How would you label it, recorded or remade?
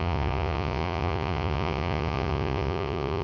remade